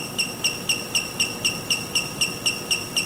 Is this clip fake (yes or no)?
no